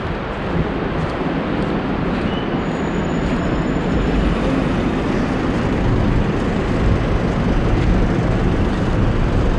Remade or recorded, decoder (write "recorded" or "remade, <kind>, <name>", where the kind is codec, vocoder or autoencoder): recorded